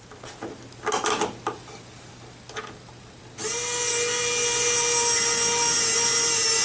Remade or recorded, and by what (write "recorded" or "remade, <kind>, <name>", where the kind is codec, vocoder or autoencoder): recorded